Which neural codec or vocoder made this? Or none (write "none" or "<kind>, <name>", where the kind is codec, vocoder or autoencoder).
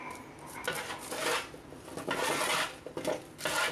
none